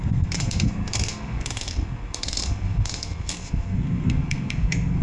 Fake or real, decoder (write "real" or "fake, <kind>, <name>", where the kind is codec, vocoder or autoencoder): fake, codec, SNAC